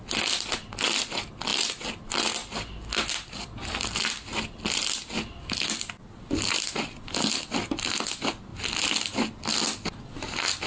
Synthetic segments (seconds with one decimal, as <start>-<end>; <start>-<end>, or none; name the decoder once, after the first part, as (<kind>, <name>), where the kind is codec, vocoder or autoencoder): none